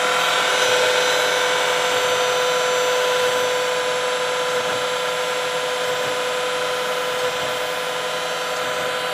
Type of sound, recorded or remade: recorded